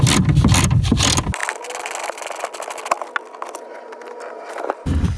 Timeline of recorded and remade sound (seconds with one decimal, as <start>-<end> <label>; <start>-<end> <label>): 0.0-5.2 recorded